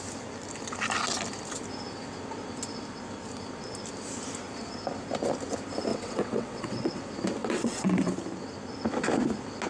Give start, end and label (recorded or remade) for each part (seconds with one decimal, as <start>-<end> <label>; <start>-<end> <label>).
0.0-5.9 recorded; 5.9-7.0 remade; 7.0-7.4 recorded; 7.4-8.1 remade; 8.1-9.7 recorded